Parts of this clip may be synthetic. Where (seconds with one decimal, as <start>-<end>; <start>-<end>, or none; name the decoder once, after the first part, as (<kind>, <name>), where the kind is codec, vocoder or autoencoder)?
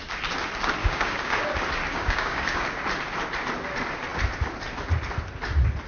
0.8-1.4 (codec, DAC); 1.9-2.6